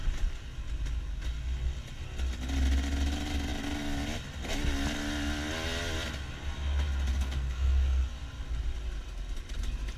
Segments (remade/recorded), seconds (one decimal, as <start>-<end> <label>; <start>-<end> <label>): 0.0-7.1 recorded; 7.1-8.0 remade; 8.0-10.0 recorded